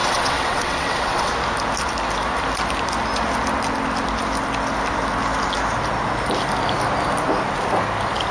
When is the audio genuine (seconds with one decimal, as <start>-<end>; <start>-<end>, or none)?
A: 1.3-8.3